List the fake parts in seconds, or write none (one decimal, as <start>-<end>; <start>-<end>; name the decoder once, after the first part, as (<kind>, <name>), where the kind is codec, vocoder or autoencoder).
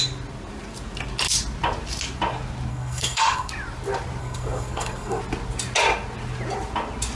2.7-3.5 (codec, SNAC); 4.2-5.2